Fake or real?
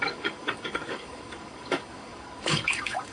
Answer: fake